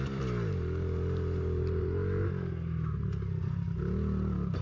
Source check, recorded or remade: recorded